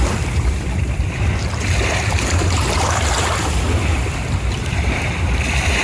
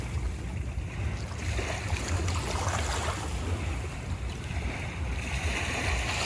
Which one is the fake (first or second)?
first